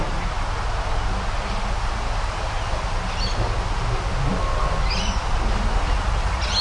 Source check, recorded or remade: recorded